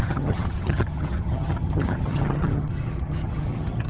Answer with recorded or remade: remade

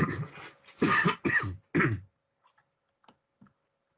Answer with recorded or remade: recorded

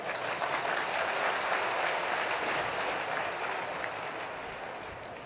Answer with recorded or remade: recorded